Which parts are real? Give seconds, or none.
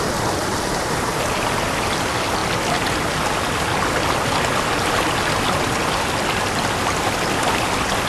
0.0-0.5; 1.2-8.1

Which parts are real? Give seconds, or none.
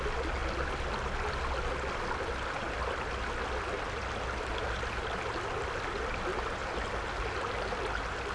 0.0-8.3